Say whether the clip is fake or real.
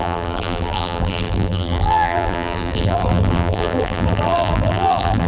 fake